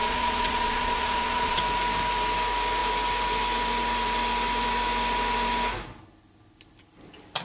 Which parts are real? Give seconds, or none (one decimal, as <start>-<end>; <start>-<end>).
1.6-7.4